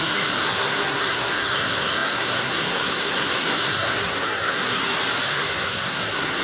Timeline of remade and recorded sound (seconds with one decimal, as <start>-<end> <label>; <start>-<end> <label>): 0.0-4.8 remade; 4.8-5.3 recorded; 5.3-6.4 remade